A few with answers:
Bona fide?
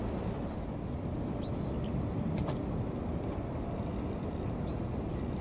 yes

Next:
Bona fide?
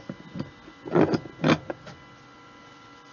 yes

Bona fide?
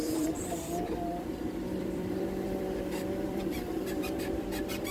no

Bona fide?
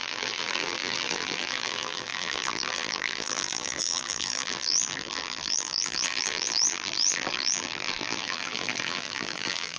no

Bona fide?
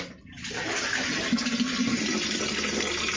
no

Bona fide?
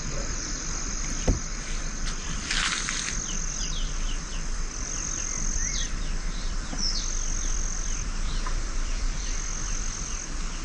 no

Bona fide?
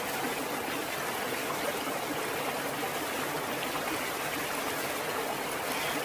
yes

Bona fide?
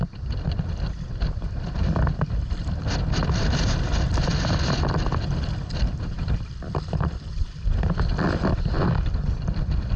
no